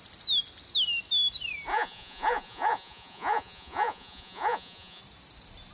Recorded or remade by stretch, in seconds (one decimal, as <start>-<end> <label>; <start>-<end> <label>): 0.0-1.7 recorded; 1.7-5.0 remade; 5.0-5.7 recorded